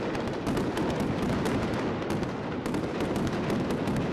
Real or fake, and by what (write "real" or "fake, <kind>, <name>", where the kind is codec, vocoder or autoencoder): real